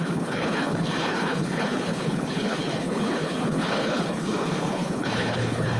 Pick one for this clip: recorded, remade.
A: remade